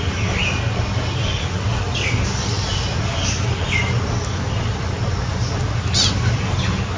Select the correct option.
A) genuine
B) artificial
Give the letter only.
A